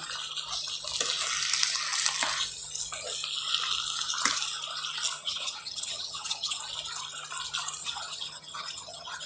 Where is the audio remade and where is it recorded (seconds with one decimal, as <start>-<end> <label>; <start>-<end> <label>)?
0.0-5.2 recorded; 5.2-6.6 remade; 6.6-7.8 recorded; 7.8-9.3 remade

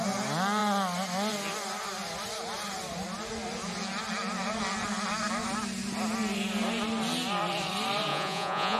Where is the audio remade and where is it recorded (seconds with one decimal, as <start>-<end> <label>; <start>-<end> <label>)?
0.0-8.1 recorded; 8.1-8.8 remade